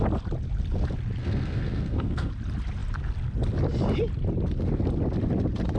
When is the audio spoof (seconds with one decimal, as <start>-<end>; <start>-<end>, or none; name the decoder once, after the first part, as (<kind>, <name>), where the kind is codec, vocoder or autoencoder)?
1.2-2.3 (codec, SNAC)